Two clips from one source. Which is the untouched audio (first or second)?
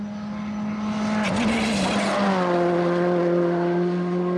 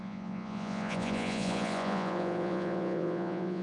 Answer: first